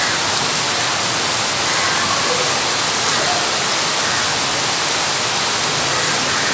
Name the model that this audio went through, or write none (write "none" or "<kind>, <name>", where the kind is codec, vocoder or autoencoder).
none